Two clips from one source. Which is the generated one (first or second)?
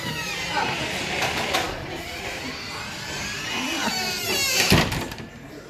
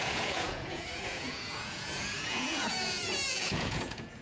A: second